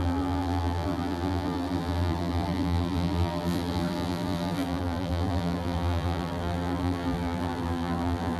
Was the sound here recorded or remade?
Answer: remade